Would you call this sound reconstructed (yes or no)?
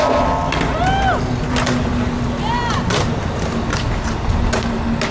no